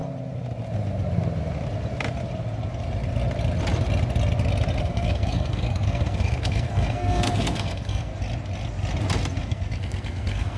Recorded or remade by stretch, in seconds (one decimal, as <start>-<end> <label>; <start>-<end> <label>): 0.0-4.8 recorded; 4.8-8.1 remade; 8.1-9.4 recorded; 9.4-10.6 remade